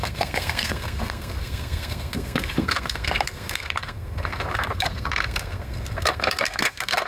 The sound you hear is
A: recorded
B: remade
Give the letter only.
B